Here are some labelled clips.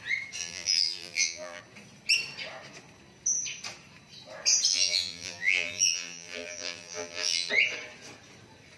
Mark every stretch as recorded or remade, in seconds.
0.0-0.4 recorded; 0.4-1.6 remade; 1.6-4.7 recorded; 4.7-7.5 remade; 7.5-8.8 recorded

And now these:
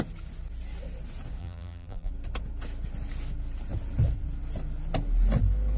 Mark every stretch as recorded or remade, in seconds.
0.0-1.4 recorded; 1.4-2.1 remade; 2.1-5.8 recorded

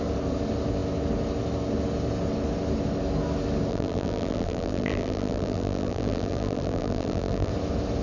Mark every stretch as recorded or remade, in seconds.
0.0-3.7 recorded; 3.7-7.5 remade; 7.5-8.0 recorded

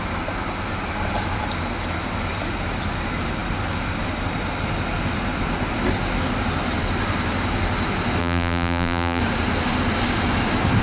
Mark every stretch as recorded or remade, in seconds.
0.0-8.2 recorded; 8.2-9.2 remade; 9.2-10.8 recorded

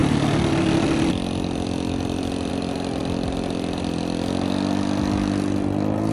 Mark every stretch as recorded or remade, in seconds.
0.0-3.0 recorded; 3.0-3.8 remade; 3.8-6.1 recorded

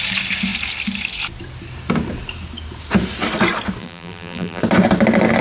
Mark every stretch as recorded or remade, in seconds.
0.0-3.8 recorded; 3.8-4.6 remade; 4.6-5.4 recorded

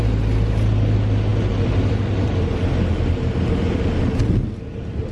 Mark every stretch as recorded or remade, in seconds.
0.0-1.3 recorded; 1.3-4.0 remade; 4.0-5.1 recorded

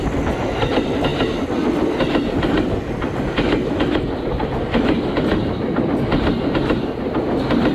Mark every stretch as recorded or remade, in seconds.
0.0-7.7 recorded